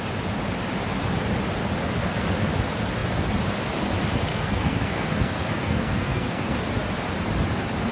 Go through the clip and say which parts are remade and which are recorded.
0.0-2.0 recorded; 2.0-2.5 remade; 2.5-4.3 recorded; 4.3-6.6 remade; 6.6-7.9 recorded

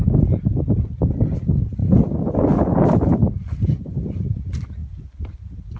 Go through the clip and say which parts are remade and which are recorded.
0.0-5.8 recorded

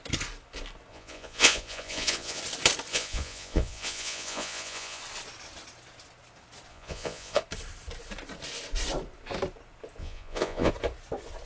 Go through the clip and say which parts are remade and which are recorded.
0.0-0.9 recorded; 0.9-2.4 remade; 2.4-2.9 recorded; 2.9-5.0 remade; 5.0-6.7 recorded; 6.7-7.4 remade; 7.4-10.0 recorded; 10.0-10.7 remade; 10.7-11.5 recorded

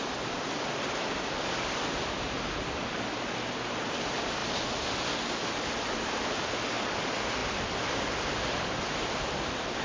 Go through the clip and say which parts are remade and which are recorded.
0.0-9.8 remade